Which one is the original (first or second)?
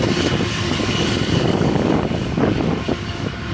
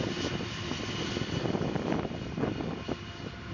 second